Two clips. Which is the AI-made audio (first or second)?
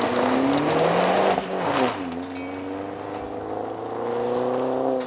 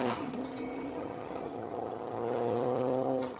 second